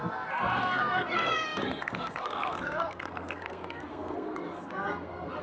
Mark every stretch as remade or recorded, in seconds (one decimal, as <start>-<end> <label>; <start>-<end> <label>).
0.0-5.4 remade